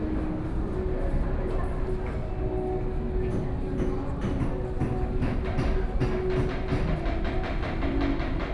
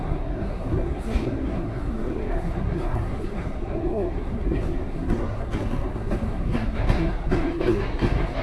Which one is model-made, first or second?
second